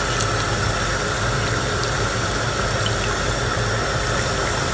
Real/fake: real